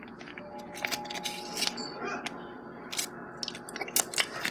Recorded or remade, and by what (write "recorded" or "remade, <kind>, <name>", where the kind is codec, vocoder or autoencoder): recorded